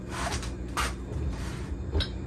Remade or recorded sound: recorded